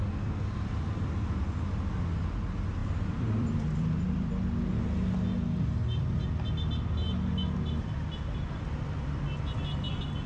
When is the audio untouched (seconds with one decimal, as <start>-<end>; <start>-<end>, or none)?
0.0-2.8; 4.3-10.3